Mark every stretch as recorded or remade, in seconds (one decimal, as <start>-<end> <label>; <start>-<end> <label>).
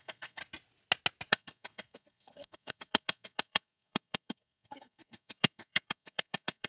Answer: 0.0-0.4 remade; 0.4-1.3 recorded; 1.3-6.7 remade